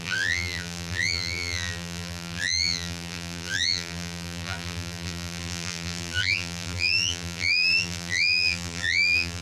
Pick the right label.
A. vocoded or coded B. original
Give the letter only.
A